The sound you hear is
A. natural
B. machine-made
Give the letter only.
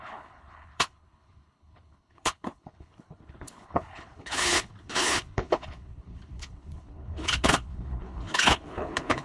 B